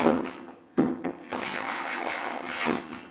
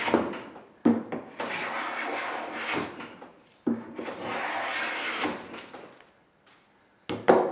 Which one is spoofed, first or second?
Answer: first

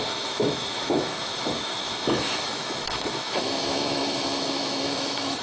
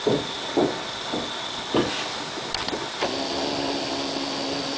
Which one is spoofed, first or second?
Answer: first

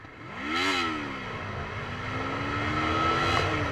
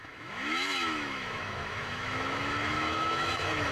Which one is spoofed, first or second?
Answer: second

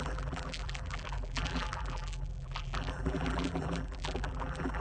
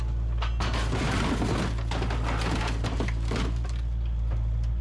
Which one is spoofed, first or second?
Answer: first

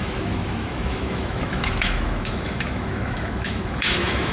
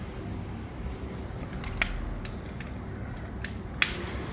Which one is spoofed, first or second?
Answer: first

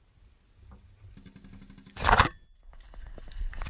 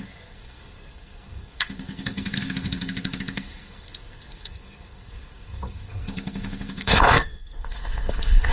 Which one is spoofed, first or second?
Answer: second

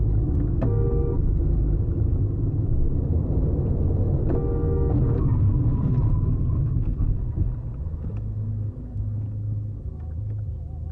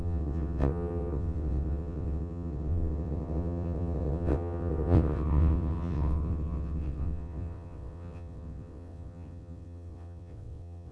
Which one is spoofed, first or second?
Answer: second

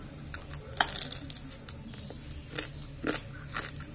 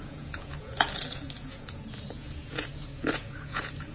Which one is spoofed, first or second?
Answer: second